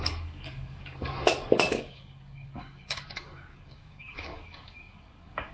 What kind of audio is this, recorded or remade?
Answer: remade